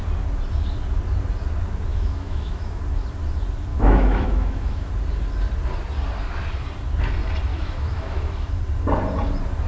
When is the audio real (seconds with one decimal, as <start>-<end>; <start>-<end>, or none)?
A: 0.0-1.9; 2.8-3.7; 4.9-7.5; 8.6-9.7